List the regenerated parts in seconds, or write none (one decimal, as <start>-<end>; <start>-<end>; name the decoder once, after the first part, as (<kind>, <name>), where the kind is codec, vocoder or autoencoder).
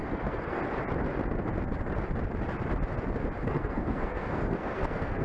0.0-0.6 (codec, SNAC); 3.4-5.2